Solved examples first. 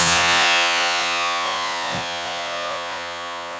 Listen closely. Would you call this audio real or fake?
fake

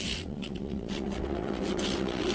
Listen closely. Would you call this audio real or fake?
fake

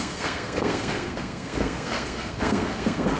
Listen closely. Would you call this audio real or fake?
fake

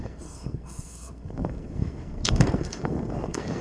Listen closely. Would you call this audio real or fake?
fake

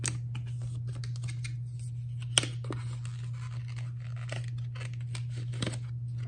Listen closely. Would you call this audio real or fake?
real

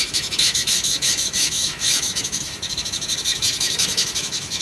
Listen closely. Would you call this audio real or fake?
fake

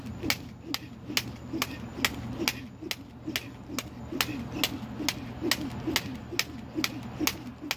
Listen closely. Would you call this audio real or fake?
real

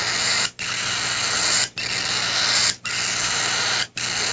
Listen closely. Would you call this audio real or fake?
real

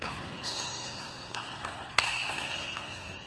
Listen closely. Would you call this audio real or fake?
fake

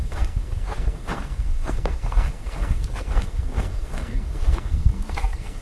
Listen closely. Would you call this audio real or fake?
fake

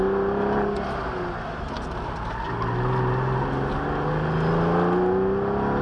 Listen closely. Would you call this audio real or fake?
real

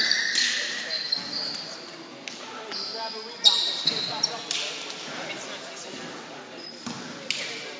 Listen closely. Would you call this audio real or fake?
real